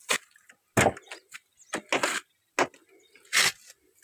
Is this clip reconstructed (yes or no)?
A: no